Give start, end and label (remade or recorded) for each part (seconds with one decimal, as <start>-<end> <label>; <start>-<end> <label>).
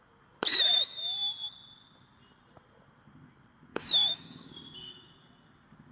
0.0-3.7 recorded; 3.7-5.1 remade; 5.1-5.9 recorded